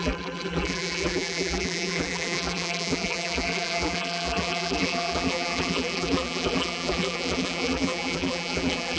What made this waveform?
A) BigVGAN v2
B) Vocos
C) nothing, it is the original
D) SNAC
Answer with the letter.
A